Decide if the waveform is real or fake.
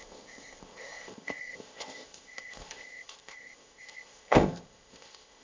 fake